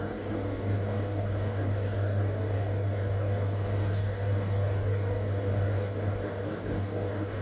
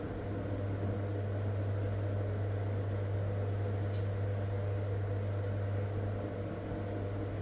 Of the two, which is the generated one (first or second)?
first